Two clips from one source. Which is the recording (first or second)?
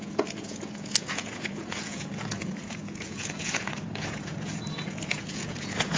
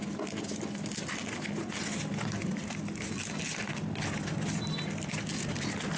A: second